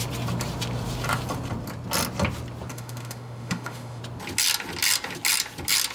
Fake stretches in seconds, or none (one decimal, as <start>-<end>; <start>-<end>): 2.7-4.0